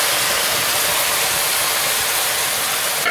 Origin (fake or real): fake